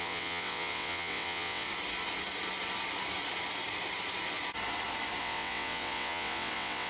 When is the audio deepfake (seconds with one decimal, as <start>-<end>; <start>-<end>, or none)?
0.0-1.7; 5.2-6.9